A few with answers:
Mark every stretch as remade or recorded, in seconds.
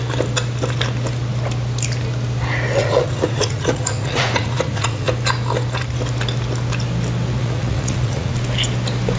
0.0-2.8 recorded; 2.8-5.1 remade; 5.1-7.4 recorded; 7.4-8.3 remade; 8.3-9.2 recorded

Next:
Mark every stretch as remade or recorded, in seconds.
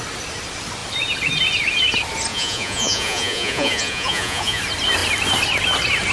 0.0-2.3 recorded; 2.3-4.6 remade; 4.6-6.1 recorded